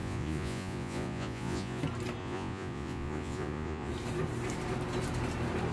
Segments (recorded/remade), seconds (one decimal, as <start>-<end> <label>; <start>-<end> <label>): 0.0-1.8 remade; 1.8-2.2 recorded; 2.2-3.9 remade; 3.9-5.7 recorded